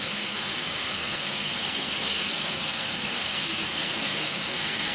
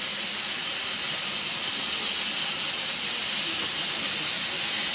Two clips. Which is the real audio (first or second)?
second